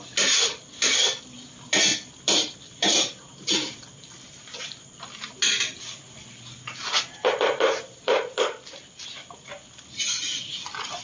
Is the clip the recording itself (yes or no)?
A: yes